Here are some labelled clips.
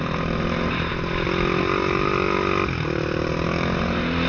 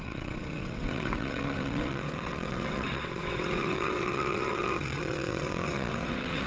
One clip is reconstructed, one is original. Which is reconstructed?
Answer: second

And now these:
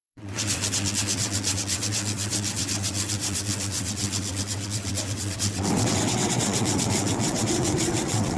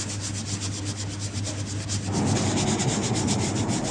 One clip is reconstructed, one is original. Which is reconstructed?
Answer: first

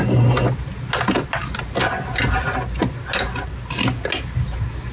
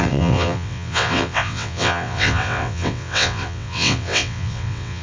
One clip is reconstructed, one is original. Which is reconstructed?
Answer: second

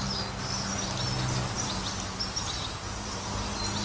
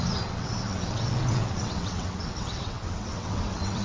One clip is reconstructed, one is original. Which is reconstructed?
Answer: second